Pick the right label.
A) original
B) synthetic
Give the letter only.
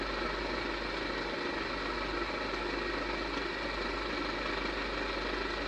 A